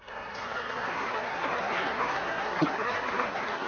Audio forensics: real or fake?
fake